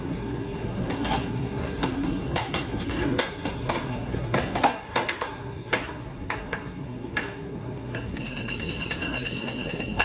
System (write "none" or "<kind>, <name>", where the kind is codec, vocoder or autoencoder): codec, SNAC